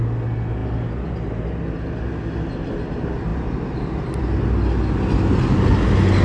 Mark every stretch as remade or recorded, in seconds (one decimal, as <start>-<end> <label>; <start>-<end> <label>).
0.0-6.2 recorded